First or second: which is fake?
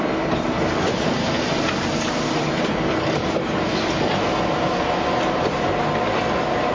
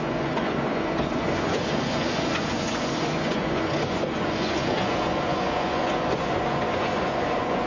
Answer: second